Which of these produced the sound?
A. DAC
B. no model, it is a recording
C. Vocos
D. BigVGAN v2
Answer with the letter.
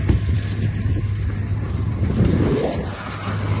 B